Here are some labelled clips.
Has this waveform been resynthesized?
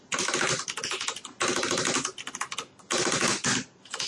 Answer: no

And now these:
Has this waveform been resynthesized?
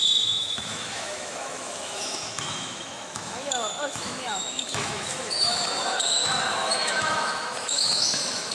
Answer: yes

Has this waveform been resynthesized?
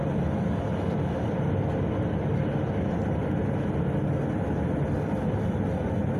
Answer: no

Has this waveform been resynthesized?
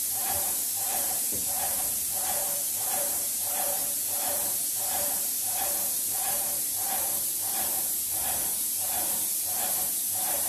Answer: yes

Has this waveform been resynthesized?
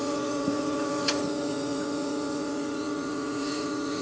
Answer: yes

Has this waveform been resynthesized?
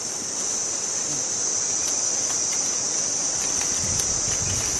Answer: no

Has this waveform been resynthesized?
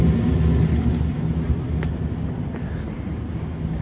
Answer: no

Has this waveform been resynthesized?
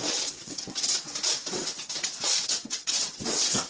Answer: yes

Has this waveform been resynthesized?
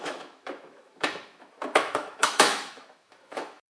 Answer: yes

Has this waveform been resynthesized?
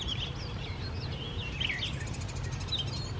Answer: no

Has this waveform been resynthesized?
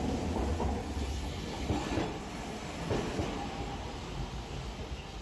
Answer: no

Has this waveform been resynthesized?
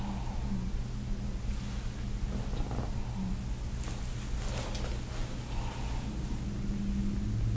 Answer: no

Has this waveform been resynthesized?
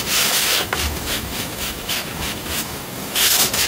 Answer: yes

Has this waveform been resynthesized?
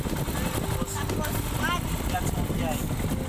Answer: no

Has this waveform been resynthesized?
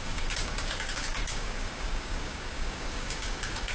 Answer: yes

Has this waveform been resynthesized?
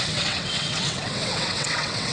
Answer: yes